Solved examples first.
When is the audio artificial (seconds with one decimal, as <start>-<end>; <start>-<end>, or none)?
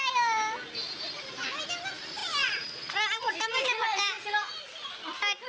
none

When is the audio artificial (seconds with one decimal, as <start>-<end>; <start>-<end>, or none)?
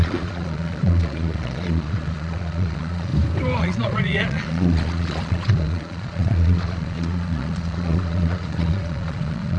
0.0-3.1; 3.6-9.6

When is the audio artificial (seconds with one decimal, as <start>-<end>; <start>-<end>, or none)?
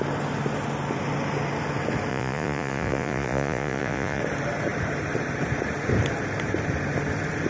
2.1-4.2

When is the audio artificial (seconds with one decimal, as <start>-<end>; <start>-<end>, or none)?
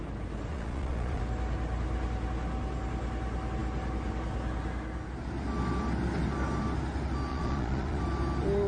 0.5-1.2; 7.3-8.0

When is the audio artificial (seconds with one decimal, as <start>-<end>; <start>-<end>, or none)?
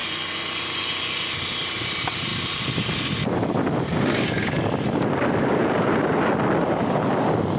0.0-1.4